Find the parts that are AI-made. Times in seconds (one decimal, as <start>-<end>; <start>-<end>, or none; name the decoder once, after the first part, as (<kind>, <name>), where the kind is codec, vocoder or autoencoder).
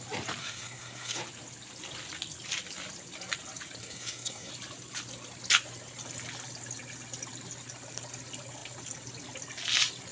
0.4-1.2 (codec, SNAC); 3.8-4.5